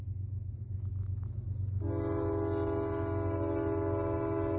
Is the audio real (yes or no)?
yes